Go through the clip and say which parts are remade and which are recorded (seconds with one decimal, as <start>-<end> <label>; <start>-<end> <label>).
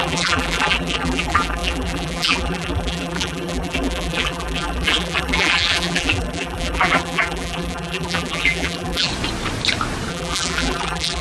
0.0-9.1 remade; 9.1-10.1 recorded; 10.1-11.2 remade